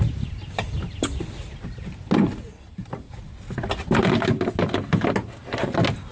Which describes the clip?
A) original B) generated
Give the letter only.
A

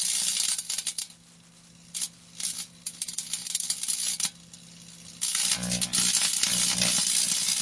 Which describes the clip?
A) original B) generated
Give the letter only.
A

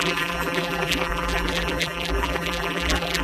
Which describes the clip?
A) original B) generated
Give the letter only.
B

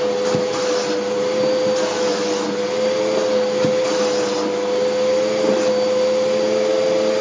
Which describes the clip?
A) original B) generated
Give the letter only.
B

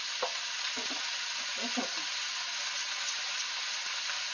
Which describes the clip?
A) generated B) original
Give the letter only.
B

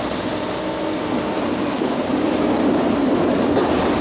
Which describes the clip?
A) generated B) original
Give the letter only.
B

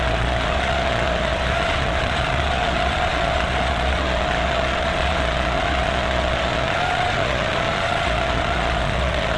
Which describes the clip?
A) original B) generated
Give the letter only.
B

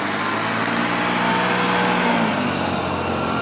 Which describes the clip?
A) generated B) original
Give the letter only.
B